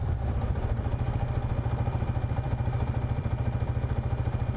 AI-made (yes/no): yes